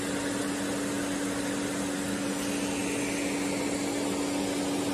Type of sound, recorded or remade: recorded